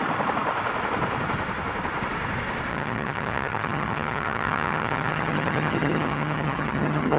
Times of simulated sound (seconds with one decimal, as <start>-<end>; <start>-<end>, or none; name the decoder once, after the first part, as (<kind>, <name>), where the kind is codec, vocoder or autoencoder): 2.7-7.2 (vocoder, HiFi-GAN)